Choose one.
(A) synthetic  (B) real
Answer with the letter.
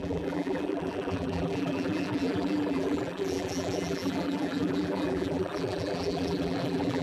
A